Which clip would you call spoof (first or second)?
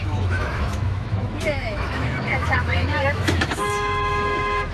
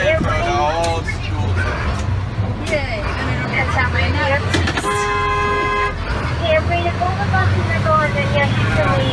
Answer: first